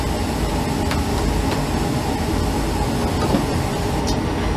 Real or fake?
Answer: real